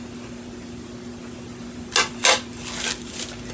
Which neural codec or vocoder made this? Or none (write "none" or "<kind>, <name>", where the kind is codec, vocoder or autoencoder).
none